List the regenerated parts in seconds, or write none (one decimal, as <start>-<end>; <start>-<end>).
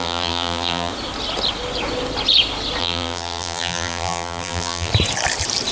0.0-0.9; 2.8-4.9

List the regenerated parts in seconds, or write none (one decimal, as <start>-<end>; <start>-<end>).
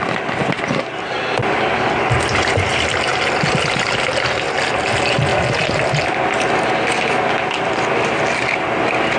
none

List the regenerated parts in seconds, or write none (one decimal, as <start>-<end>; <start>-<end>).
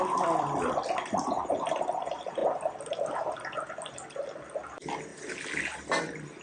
0.0-5.1; 6.0-6.4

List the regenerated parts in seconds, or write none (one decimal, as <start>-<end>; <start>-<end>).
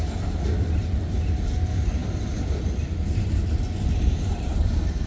none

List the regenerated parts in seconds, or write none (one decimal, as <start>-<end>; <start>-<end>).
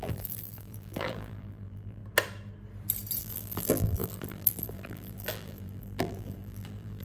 0.0-2.0; 3.2-7.0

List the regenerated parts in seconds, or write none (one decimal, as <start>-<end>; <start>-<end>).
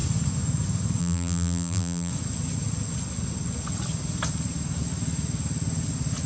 1.0-2.1